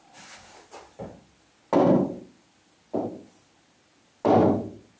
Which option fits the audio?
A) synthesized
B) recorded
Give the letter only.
B